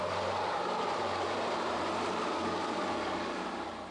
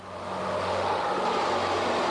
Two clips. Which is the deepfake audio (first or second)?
first